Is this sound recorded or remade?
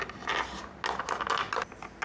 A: recorded